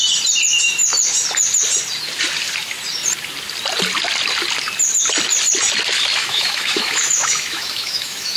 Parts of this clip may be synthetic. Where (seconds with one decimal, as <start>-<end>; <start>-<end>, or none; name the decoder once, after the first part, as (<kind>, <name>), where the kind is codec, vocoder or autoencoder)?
6.2-8.4 (autoencoder, DAC-VAE)